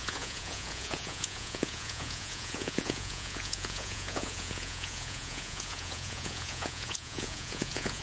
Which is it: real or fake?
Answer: fake